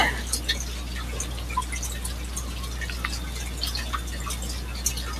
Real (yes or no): yes